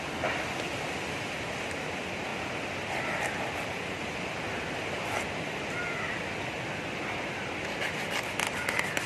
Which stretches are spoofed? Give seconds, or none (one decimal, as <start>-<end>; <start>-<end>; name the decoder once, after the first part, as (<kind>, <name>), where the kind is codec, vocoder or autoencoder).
none